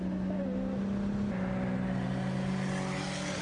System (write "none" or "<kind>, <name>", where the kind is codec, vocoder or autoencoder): none